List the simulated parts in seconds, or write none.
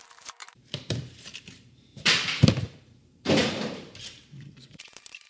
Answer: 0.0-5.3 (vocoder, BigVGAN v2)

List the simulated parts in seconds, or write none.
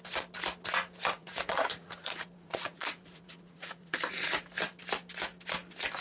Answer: 1.2-4.4 (vocoder, Vocos)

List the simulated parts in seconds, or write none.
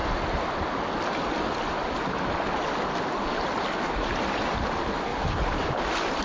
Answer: none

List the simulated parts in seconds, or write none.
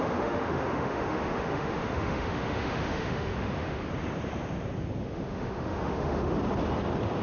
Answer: 0.0-3.8 (autoencoder, DAC-VAE); 5.0-6.3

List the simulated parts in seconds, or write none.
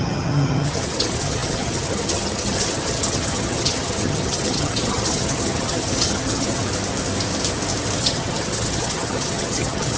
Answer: 0.0-6.6 (vocoder, HiFi-GAN); 8.0-10.0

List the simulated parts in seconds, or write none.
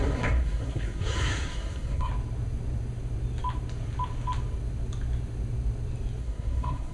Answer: 0.0-2.1 (codec, SNAC); 6.2-6.9